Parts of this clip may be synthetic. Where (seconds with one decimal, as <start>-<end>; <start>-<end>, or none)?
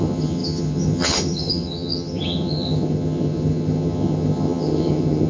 0.0-5.3